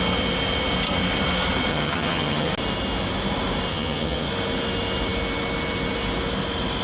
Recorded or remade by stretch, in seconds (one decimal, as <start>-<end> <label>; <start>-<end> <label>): 0.0-1.7 recorded; 1.7-2.5 remade; 2.5-3.7 recorded; 3.7-4.3 remade; 4.3-6.8 recorded